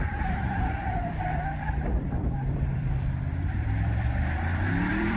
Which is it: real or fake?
fake